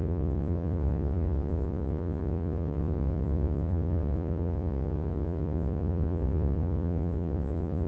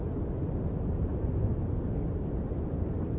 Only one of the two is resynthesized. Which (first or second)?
first